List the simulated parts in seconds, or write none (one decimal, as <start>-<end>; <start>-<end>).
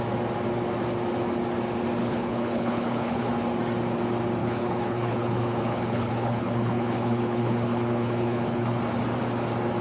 2.0-3.3; 4.4-8.8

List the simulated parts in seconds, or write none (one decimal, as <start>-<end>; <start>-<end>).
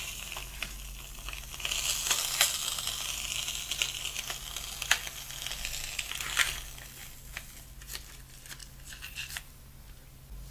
none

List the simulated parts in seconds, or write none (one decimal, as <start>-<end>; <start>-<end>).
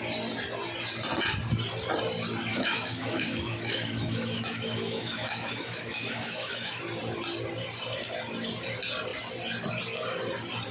2.5-6.8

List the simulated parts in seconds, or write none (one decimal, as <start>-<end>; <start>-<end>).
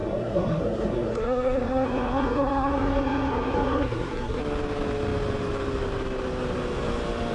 0.0-4.4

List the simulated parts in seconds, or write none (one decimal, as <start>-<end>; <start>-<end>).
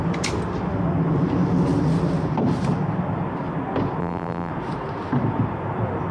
4.0-4.5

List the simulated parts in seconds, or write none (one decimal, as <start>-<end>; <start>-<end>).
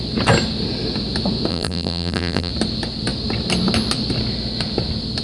1.5-2.5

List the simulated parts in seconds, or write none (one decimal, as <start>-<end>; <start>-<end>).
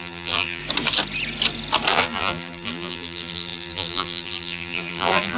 0.0-0.6; 1.9-5.4